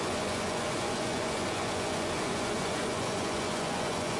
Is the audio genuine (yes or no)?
no